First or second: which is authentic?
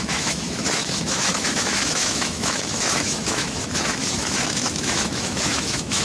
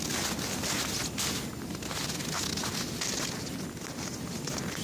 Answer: second